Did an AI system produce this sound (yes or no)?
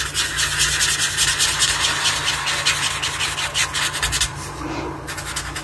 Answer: no